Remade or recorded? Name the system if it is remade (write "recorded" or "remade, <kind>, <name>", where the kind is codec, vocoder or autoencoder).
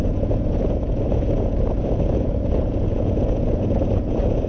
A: remade, vocoder, Vocos